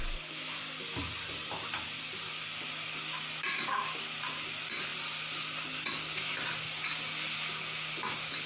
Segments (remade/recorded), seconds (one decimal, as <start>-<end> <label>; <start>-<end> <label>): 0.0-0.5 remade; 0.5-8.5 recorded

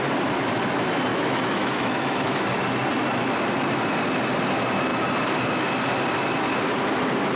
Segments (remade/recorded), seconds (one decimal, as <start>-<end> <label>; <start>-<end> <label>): 0.0-1.1 recorded; 1.1-2.6 remade; 2.6-7.4 recorded

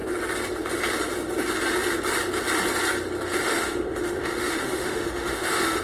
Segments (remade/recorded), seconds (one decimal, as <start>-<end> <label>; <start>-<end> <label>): 0.0-3.4 recorded; 3.4-5.8 remade